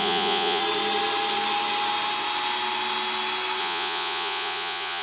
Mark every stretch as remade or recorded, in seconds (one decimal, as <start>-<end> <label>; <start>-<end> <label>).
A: 0.0-0.6 remade; 0.6-3.6 recorded; 3.6-5.0 remade